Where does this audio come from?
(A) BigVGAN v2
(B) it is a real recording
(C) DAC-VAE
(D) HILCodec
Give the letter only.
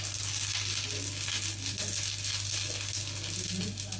B